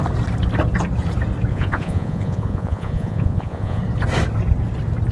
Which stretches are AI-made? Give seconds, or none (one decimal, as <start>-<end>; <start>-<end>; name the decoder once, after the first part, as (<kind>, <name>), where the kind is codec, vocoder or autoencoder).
1.5-3.8 (vocoder, Vocos)